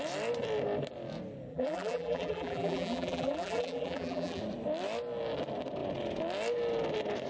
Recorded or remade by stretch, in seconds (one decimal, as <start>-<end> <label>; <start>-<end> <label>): 0.0-1.5 recorded; 1.5-4.4 remade; 4.4-7.3 recorded